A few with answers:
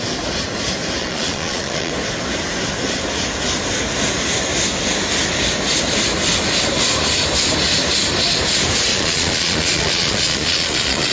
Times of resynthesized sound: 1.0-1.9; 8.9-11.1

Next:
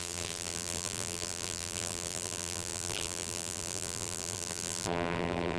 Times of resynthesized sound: 0.0-5.6